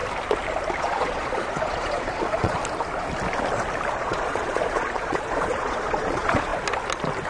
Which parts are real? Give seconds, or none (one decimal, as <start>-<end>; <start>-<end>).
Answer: 0.0-0.8; 2.6-3.9; 6.5-7.3